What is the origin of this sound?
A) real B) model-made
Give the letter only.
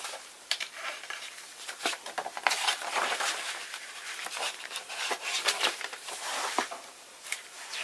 B